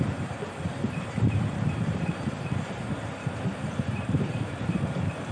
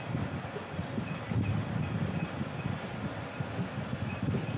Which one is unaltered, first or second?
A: second